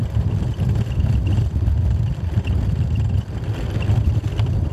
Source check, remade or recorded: remade